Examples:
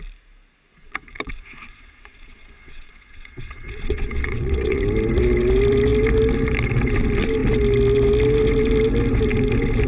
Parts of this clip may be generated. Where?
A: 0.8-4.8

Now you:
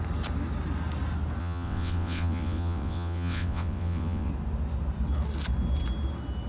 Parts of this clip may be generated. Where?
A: 1.4-4.3

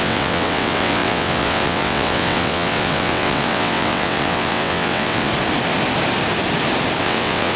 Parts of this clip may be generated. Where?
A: 0.0-5.3; 7.0-7.6

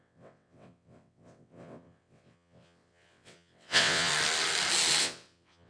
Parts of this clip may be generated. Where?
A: 0.0-4.1; 5.0-5.7

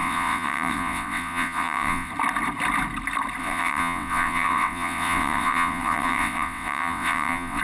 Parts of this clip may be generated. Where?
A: 0.0-2.1; 3.4-7.6